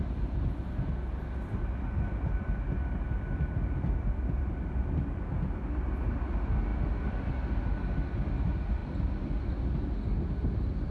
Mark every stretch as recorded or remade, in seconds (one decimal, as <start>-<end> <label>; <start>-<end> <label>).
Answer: 0.0-10.9 recorded